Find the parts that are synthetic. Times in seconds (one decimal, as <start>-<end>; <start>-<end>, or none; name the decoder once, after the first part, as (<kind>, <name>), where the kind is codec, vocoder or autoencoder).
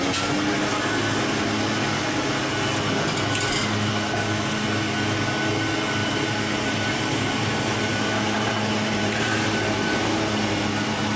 6.0-10.1 (vocoder, BigVGAN v2)